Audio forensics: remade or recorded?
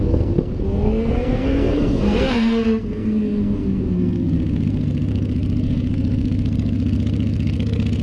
remade